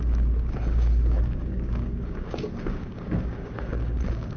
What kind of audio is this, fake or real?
fake